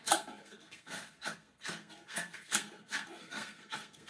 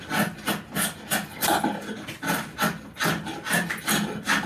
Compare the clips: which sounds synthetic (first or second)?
first